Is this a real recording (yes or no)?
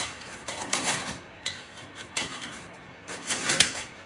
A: no